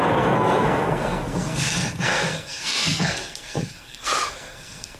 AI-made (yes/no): yes